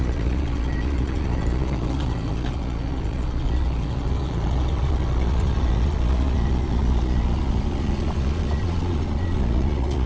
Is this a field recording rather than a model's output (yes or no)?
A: no